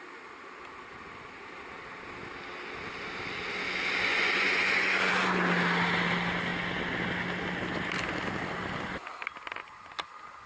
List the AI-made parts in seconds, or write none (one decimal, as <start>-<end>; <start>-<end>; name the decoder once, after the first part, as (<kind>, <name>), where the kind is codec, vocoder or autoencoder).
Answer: 4.1-5.1 (vocoder, Vocos)